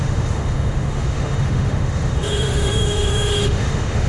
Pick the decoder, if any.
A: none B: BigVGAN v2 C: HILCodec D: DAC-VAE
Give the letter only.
D